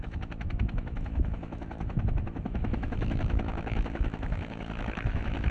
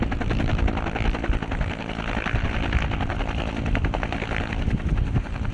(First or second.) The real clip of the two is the second